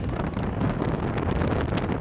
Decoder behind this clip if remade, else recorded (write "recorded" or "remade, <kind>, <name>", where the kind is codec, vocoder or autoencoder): recorded